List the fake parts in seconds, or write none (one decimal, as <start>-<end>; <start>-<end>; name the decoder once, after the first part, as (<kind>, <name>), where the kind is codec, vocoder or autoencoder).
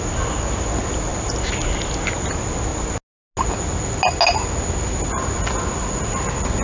none